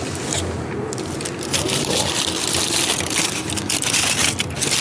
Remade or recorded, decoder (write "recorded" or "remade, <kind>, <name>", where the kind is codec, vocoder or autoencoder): recorded